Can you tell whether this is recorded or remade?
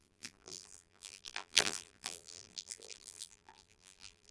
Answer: remade